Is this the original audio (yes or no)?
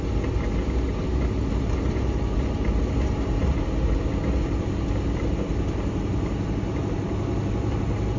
yes